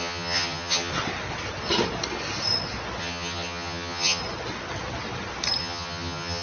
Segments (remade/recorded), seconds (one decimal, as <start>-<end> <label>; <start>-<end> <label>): 0.0-0.9 remade; 0.9-3.0 recorded; 3.0-4.2 remade; 4.2-5.6 recorded; 5.6-6.4 remade